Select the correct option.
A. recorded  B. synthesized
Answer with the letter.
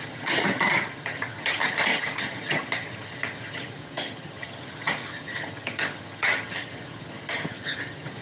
B